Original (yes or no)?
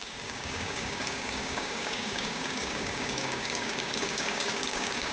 no